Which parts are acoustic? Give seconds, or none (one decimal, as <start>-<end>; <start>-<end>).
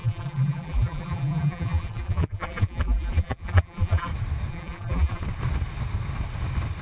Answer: 4.1-4.5; 5.2-6.8